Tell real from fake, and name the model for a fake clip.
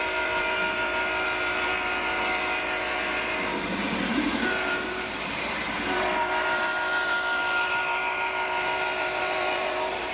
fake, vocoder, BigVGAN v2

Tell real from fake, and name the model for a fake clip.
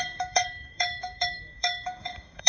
fake, codec, DAC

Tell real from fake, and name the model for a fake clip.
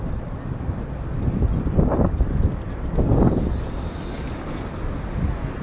real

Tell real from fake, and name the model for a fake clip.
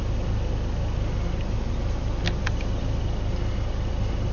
real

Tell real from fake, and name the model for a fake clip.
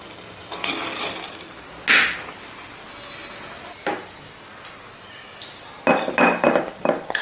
real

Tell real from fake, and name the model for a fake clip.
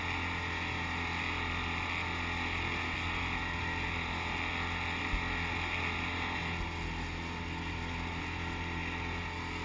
real